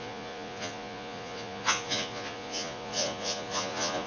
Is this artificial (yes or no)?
yes